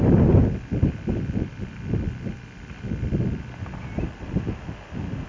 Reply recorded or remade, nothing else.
recorded